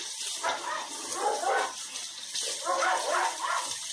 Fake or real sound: real